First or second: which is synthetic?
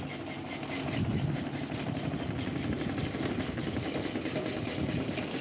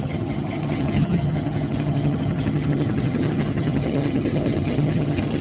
second